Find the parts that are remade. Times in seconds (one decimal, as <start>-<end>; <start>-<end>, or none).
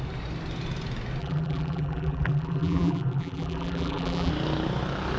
1.2-4.3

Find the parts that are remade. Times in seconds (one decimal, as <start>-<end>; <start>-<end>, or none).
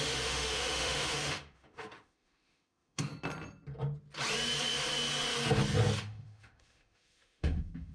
0.0-3.1; 6.0-7.9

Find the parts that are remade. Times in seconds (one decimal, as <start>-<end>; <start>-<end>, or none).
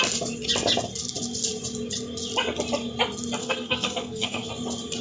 3.4-4.5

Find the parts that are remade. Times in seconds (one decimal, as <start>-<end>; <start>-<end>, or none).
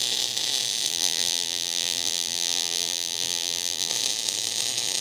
0.9-3.9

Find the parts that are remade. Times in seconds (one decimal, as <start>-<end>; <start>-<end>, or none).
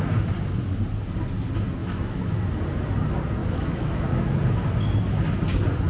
1.8-2.4; 3.4-4.4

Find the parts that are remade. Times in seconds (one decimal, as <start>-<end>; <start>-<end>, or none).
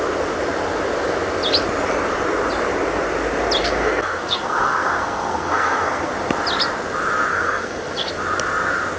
3.6-6.1; 7.3-8.1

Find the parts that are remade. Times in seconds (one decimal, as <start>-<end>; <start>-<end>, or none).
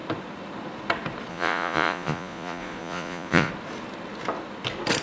1.3-3.5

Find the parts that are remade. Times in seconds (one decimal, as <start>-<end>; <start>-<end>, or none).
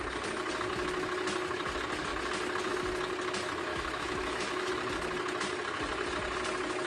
3.7-4.7